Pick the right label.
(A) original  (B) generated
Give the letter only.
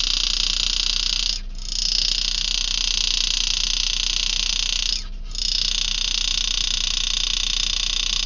A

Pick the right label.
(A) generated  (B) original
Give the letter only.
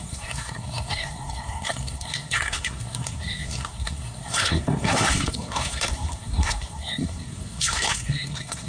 A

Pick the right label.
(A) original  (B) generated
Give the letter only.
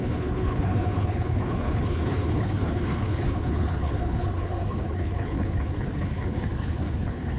B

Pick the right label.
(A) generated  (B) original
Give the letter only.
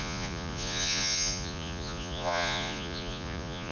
A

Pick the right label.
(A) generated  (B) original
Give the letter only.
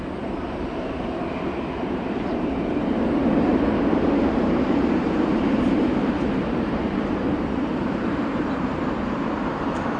A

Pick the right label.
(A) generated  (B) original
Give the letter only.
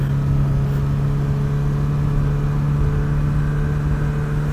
B